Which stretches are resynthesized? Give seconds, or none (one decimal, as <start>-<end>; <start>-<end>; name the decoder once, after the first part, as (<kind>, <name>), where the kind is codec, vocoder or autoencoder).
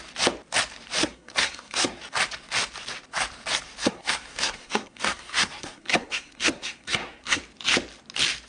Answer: 1.0-2.0 (codec, SNAC); 3.8-7.4